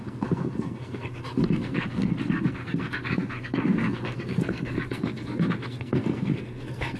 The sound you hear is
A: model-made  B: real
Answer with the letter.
A